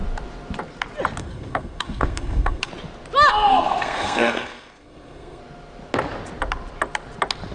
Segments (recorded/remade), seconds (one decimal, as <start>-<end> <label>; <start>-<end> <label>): 0.0-1.2 recorded; 1.2-2.7 remade; 2.7-3.5 recorded; 3.5-5.4 remade; 5.4-7.5 recorded